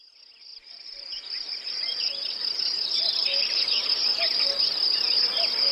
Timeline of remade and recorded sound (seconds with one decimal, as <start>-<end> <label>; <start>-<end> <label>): 0.0-0.5 recorded; 0.5-3.9 remade; 3.9-5.7 recorded